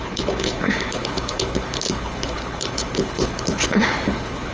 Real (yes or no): no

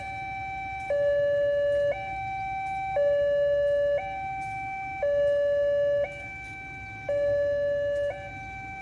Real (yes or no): yes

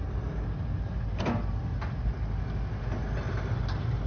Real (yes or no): yes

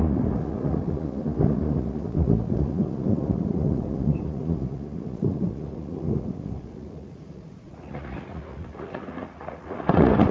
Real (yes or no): no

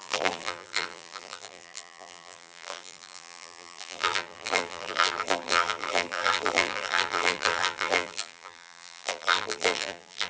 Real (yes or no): no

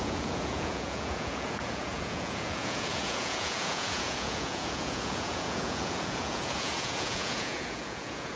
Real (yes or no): no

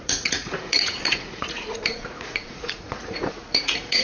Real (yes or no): no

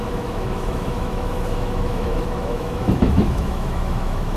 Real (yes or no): no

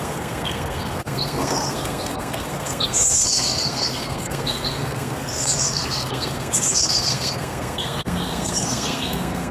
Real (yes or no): no